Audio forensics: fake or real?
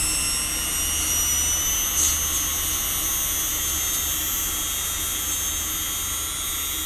real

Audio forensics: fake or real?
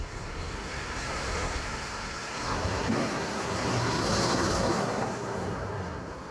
fake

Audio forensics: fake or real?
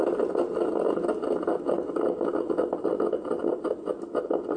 real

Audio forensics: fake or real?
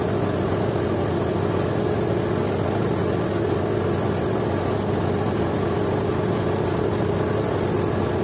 real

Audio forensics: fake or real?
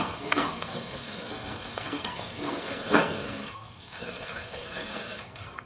fake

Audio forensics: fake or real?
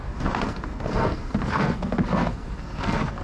fake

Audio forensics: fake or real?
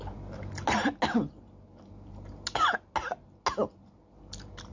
real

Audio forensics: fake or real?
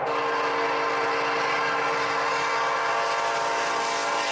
real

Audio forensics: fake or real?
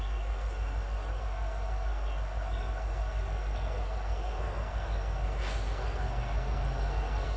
fake